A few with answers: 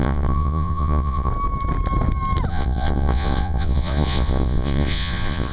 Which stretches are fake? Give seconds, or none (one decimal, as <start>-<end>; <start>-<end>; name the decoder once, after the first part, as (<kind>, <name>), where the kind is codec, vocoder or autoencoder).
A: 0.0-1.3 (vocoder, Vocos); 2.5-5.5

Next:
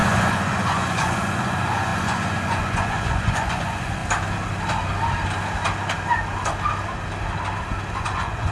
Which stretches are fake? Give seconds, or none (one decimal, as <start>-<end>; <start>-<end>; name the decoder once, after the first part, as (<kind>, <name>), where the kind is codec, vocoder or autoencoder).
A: 0.0-4.0 (vocoder, Vocos); 8.0-8.5

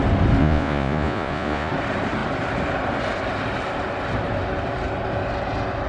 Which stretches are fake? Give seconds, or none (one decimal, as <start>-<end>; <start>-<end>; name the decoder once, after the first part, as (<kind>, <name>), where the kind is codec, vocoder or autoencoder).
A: 0.4-1.7 (vocoder, Vocos)